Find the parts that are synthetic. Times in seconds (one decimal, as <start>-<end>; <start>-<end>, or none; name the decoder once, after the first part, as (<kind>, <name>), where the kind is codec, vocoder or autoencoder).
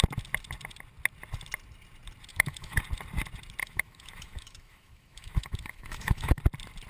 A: 2.3-2.8 (autoencoder, DAC-VAE); 3.6-6.4